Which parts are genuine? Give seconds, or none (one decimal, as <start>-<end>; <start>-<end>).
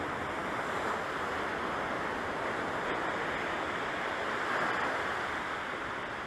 0.0-6.3